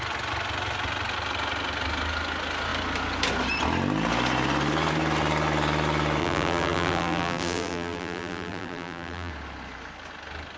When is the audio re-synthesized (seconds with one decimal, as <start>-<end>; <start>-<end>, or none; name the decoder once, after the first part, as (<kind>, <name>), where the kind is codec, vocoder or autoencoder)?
6.2-9.3 (vocoder, BigVGAN v2)